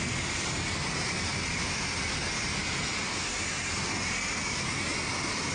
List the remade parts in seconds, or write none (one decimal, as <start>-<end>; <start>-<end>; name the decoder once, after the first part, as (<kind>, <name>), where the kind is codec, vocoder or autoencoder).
none